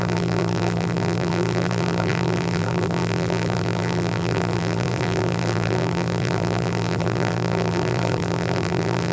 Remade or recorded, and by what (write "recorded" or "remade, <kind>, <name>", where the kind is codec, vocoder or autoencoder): remade, vocoder, BigVGAN v2